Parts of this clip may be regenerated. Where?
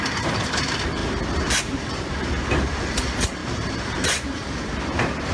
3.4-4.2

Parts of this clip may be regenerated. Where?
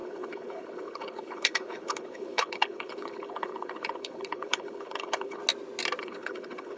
0.0-5.4; 6.0-6.8